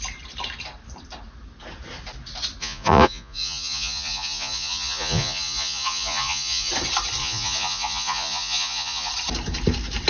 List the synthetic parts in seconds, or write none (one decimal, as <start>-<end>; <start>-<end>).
2.6-6.7; 7.2-9.1